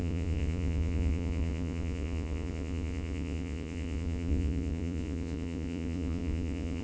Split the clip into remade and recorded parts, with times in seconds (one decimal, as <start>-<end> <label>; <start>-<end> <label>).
0.0-6.8 remade